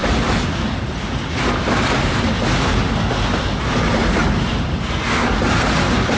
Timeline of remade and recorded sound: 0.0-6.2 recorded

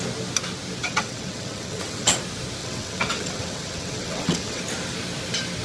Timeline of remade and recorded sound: 0.0-0.8 recorded; 0.8-2.2 remade; 2.2-2.6 recorded; 2.6-4.6 remade; 4.6-5.6 recorded

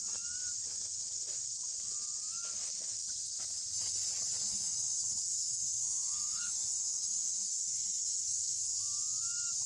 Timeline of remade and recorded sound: 0.0-2.6 recorded; 2.6-3.1 remade; 3.1-4.5 recorded; 4.5-8.8 remade; 8.8-9.7 recorded

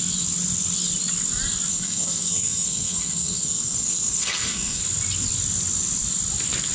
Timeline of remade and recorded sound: 0.0-1.7 recorded; 1.7-4.8 remade; 4.8-6.7 recorded